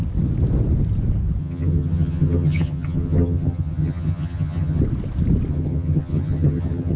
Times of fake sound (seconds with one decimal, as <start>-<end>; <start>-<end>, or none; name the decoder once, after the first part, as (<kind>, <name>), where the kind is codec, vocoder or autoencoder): 1.4-4.8 (vocoder, HiFi-GAN); 5.5-7.0